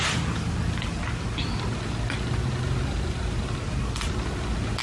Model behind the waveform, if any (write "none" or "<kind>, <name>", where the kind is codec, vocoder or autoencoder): none